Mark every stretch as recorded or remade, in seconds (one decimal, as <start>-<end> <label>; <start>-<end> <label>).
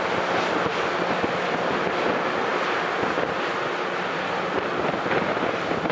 0.0-5.9 recorded